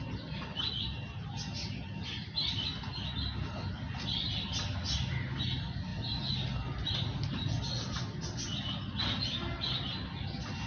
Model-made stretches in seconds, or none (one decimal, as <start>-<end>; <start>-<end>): none